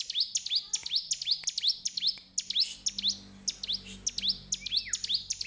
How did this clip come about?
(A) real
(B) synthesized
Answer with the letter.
A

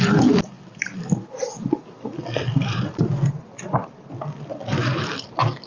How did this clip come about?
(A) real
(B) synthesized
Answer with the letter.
B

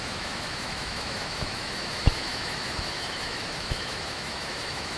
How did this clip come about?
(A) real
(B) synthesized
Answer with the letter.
B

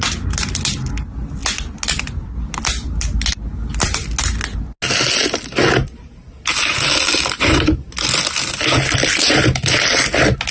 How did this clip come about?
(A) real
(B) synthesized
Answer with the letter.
A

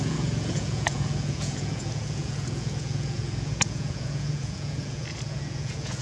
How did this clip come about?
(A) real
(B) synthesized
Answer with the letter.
B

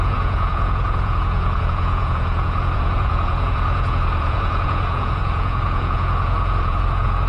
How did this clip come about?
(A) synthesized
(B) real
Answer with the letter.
A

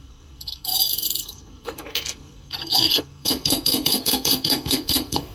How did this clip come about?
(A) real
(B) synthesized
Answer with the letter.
B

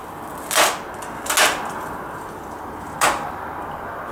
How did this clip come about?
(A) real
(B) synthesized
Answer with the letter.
A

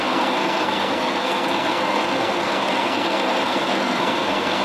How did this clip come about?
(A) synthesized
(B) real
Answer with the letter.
A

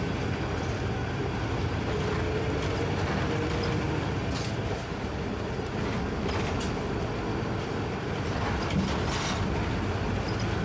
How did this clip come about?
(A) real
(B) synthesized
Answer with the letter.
A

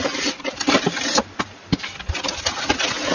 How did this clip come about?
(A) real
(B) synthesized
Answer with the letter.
A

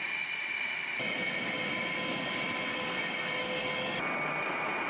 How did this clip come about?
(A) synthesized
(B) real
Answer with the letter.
B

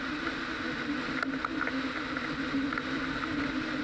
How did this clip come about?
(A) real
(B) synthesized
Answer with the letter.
A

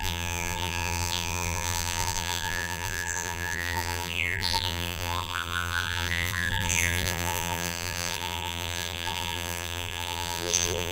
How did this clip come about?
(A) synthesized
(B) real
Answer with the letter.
A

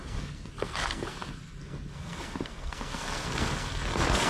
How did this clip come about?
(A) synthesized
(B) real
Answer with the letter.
A